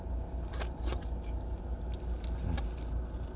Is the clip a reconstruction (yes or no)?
no